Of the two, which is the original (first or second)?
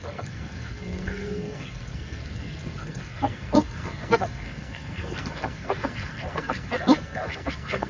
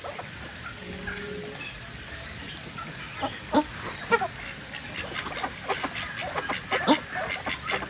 second